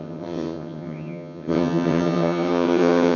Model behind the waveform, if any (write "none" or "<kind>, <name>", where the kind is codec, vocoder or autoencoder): vocoder, HiFi-GAN